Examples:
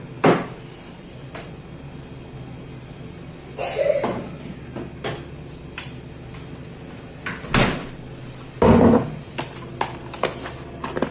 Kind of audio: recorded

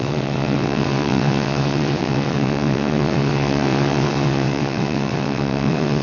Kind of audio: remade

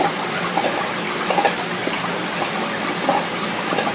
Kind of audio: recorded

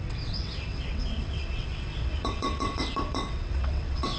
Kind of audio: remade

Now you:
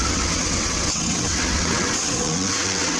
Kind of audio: remade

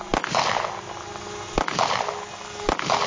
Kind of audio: recorded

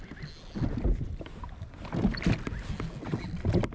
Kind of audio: recorded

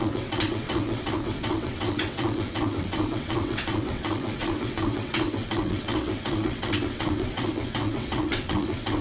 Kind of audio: remade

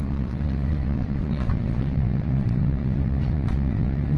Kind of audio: remade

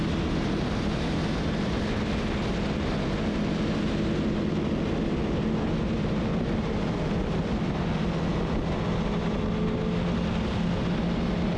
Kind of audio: recorded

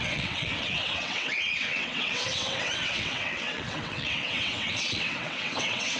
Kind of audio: remade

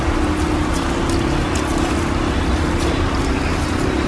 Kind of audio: recorded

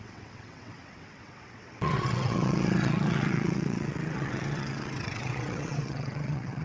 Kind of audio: remade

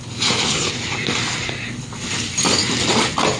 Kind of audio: recorded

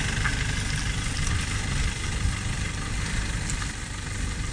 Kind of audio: recorded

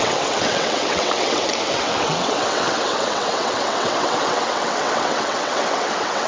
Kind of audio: remade